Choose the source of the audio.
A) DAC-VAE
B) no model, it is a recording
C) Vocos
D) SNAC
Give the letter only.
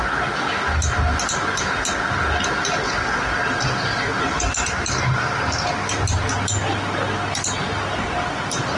B